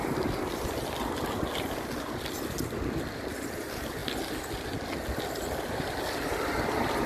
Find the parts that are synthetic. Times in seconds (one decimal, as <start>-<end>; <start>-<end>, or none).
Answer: none